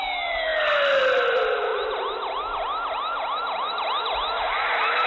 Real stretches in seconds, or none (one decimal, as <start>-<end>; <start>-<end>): 0.0-5.1